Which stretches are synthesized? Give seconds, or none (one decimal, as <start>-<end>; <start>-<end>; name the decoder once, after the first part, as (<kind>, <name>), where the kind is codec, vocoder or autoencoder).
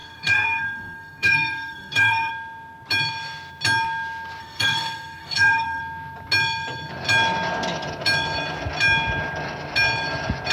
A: 0.0-2.3 (codec, SNAC); 4.4-5.8